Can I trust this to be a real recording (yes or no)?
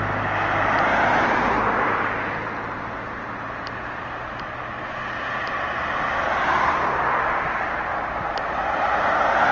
yes